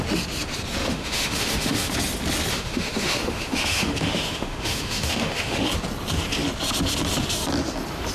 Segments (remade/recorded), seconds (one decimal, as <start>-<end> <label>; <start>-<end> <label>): 0.0-0.8 recorded; 0.8-1.9 remade; 1.9-2.5 recorded; 2.5-5.7 remade; 5.7-8.1 recorded